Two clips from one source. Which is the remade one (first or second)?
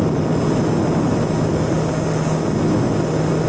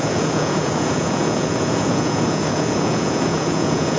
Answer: second